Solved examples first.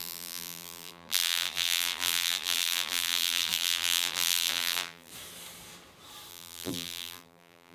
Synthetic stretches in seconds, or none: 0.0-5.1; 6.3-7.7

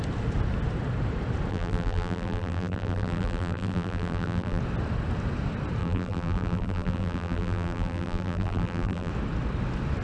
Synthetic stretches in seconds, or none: 1.5-4.6; 5.8-9.1

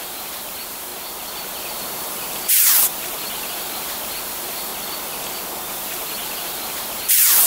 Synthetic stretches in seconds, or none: 0.0-0.9; 2.0-4.7; 5.7-7.5

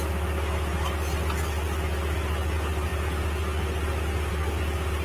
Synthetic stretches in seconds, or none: none

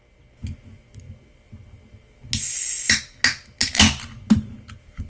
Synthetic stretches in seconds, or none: none

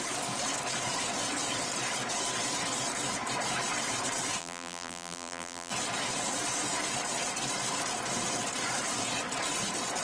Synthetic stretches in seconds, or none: 4.4-5.7